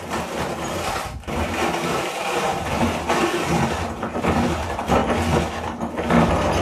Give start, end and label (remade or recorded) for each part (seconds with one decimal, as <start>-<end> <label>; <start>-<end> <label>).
0.0-2.5 remade; 2.5-4.0 recorded; 4.0-5.0 remade; 5.0-6.6 recorded